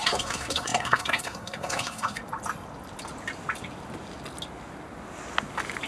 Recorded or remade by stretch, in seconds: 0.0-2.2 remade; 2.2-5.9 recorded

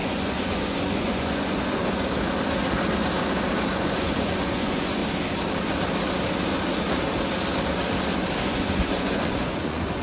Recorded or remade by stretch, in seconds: 0.0-1.8 remade; 1.8-3.7 recorded; 3.7-5.0 remade; 5.0-8.4 recorded; 8.4-10.0 remade

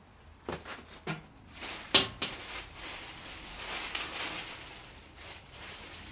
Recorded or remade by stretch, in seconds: 0.0-5.0 recorded; 5.0-6.1 remade

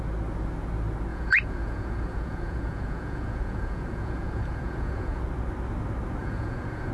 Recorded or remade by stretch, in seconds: 0.0-1.1 recorded; 1.1-5.2 remade; 5.2-6.2 recorded; 6.2-6.9 remade